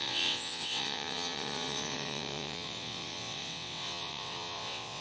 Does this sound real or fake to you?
fake